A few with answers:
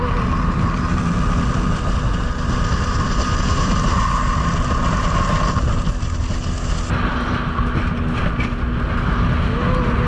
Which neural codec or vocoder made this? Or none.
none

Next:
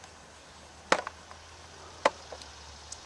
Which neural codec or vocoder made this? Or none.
none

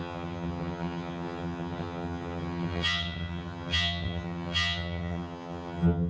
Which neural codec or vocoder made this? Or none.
vocoder, HiFi-GAN